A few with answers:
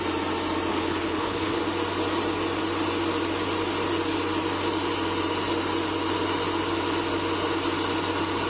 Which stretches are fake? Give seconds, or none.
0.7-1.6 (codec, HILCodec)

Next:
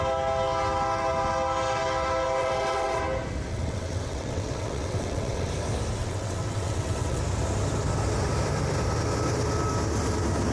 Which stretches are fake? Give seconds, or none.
2.4-3.0 (vocoder, WaveNeXt); 3.5-5.5; 6.0-7.2

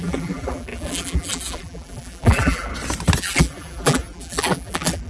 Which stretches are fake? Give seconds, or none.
0.0-2.7 (vocoder, BigVGAN v2); 3.2-5.1

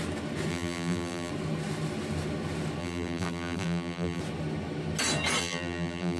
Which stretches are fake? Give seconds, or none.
0.5-1.3 (vocoder, BigVGAN v2); 2.8-4.2; 5.4-6.2

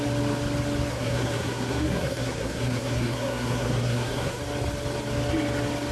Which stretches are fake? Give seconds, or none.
0.9-4.4 (codec, SNAC)